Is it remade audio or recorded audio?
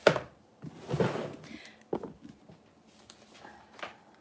recorded